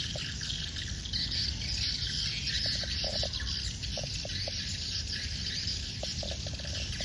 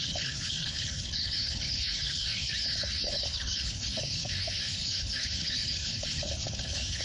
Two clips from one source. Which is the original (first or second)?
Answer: first